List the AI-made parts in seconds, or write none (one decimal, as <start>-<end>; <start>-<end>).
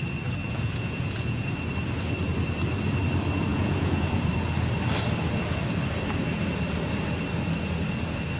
0.4-1.5; 3.5-4.3